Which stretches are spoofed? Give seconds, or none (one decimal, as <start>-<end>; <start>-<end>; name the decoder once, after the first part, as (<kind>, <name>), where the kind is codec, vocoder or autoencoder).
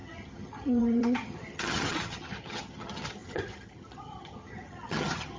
0.0-5.4 (vocoder, HiFi-GAN)